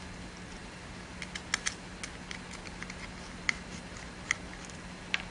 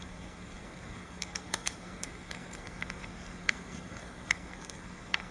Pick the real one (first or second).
first